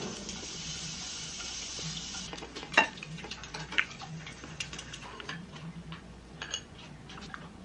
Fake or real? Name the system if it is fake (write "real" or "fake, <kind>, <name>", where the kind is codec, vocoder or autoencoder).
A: fake, vocoder, Vocos